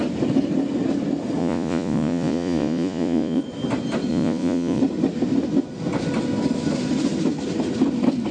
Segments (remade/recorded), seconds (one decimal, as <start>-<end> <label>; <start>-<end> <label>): 0.0-1.4 recorded; 1.4-3.4 remade; 3.4-4.1 recorded; 4.1-4.8 remade; 4.8-8.3 recorded